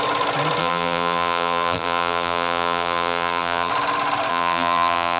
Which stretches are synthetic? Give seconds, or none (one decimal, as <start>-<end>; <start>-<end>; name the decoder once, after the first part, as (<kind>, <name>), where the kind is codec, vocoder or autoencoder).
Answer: 0.6-3.7 (vocoder, BigVGAN v2); 4.3-5.2